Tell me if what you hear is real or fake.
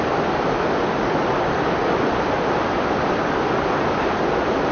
real